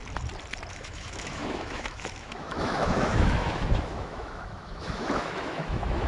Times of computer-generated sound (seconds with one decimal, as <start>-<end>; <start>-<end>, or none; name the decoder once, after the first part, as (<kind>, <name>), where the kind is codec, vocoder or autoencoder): 0.7-6.1 (autoencoder, DAC-VAE)